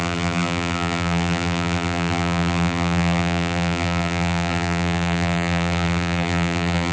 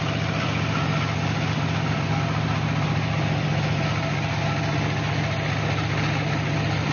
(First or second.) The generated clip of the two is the first